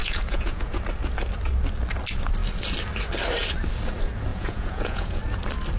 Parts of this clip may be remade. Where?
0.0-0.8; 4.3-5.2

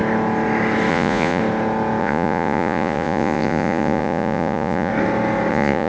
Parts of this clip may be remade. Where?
0.9-1.4; 2.0-4.9; 5.5-5.9